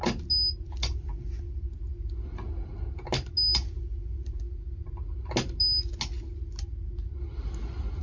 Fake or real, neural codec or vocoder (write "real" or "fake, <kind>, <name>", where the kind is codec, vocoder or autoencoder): real